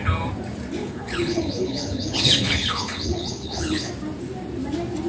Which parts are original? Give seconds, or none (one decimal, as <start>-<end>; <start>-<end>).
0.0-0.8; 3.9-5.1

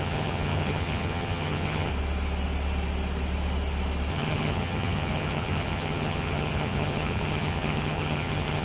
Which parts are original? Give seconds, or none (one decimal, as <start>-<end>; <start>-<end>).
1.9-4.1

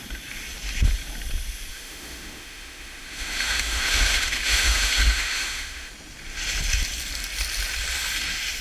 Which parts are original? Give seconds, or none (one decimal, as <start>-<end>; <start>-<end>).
0.0-1.7; 5.9-8.6